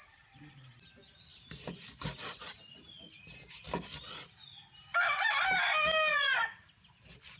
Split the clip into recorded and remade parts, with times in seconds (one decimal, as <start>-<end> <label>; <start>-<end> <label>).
0.0-6.1 recorded; 6.1-6.7 remade; 6.7-7.4 recorded